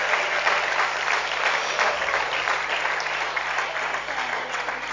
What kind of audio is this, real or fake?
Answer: real